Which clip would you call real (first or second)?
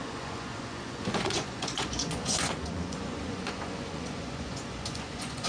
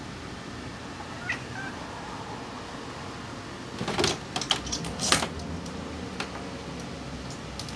second